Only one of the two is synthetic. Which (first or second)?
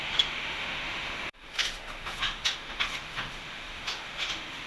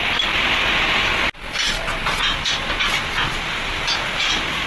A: first